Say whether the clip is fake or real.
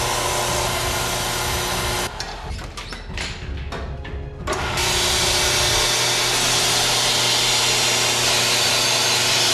real